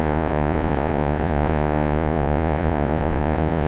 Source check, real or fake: fake